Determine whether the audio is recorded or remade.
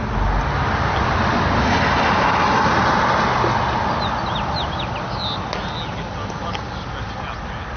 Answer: recorded